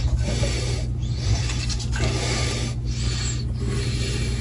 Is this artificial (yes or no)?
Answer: no